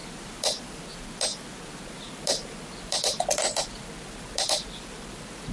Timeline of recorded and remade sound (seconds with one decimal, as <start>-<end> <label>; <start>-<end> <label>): 0.0-5.5 recorded